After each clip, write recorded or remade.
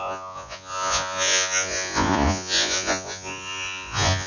remade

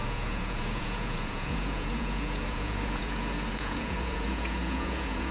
remade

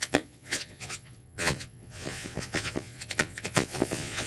remade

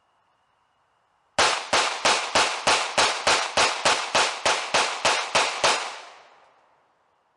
recorded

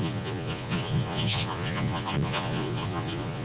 remade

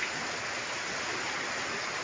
recorded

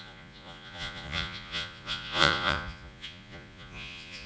remade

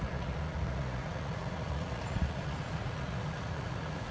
remade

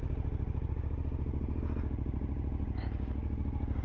recorded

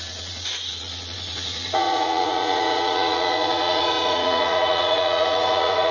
remade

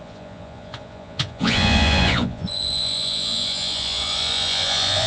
remade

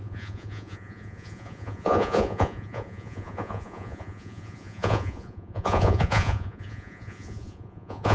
remade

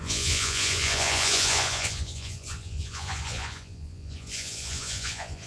remade